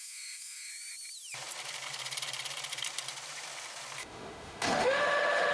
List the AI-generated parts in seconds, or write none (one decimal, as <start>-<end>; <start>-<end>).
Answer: 0.0-0.7; 4.0-5.5